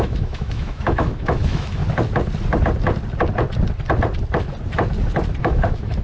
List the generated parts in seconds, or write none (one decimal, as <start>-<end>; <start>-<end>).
0.0-1.8; 5.4-6.0